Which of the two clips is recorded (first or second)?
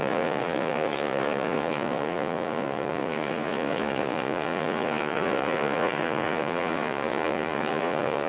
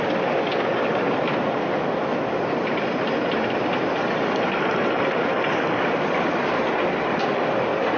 second